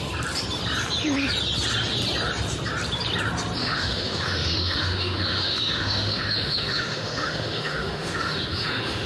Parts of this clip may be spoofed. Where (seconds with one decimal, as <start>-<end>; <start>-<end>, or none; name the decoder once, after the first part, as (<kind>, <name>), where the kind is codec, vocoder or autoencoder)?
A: 3.6-9.1 (autoencoder, DAC-VAE)